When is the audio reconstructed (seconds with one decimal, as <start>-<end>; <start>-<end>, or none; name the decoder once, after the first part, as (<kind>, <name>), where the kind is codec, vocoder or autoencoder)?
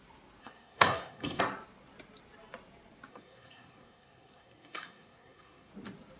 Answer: 0.4-1.4 (codec, SNAC); 3.1-5.7